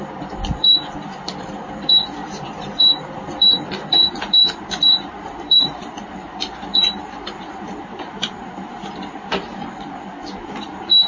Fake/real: fake